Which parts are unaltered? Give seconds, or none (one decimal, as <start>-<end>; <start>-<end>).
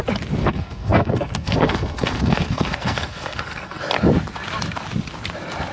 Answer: 0.0-0.4; 3.8-5.7